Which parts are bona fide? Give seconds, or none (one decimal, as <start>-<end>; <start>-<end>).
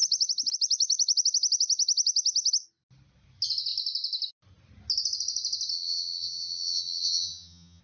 0.0-5.7